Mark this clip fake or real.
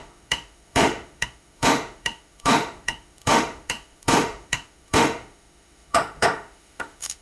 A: fake